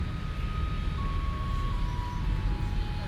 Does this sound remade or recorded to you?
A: recorded